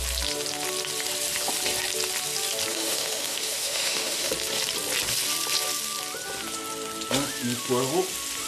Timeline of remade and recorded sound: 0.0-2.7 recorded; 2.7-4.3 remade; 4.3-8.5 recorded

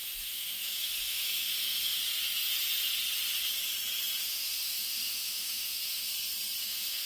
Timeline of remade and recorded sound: 0.0-2.0 remade; 2.0-4.2 recorded; 4.2-6.1 remade; 6.1-6.6 recorded; 6.6-7.1 remade

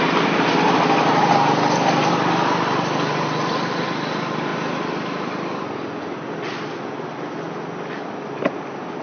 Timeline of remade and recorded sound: 0.0-9.0 recorded